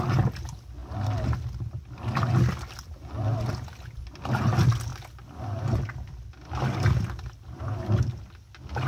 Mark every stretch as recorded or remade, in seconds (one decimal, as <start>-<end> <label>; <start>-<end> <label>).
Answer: 0.0-8.9 recorded